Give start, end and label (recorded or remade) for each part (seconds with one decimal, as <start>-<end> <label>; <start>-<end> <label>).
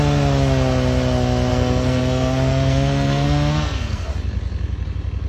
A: 0.0-1.5 recorded; 1.5-4.1 remade; 4.1-5.3 recorded